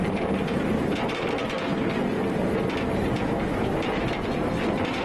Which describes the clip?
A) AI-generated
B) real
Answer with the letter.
A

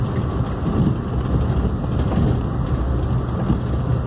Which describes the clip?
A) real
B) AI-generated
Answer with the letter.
A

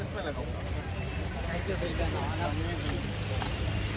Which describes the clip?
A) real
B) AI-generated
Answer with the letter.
A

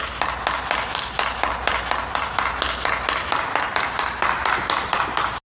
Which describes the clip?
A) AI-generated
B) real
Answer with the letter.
B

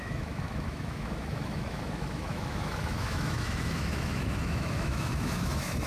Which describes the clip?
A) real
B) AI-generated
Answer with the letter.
B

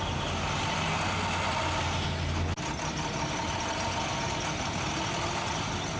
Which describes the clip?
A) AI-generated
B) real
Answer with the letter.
B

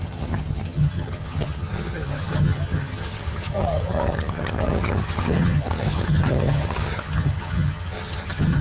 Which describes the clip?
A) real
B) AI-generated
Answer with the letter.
B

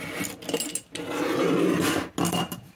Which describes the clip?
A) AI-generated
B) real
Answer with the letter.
B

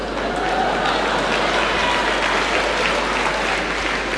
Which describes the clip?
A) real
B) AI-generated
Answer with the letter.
A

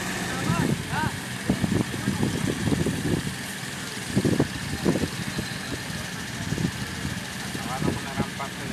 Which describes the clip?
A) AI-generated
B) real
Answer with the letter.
A